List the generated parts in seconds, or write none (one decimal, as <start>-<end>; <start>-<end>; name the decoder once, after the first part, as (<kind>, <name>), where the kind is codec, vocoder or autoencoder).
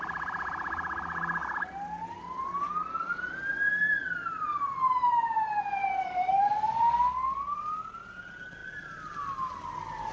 5.8-7.0 (vocoder, BigVGAN v2)